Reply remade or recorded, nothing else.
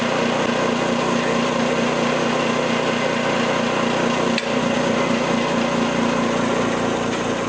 recorded